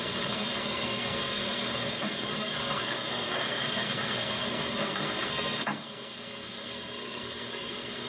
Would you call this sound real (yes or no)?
no